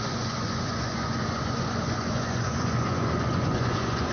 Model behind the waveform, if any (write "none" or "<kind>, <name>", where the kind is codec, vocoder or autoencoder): vocoder, Vocos